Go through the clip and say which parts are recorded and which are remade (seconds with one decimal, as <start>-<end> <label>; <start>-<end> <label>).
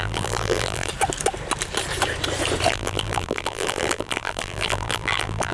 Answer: 0.0-0.9 remade; 0.9-2.7 recorded; 2.7-5.5 remade